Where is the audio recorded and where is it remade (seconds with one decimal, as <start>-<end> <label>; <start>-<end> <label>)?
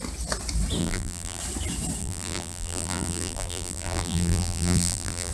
0.0-0.8 recorded; 0.8-1.4 remade; 1.4-2.0 recorded; 2.0-5.3 remade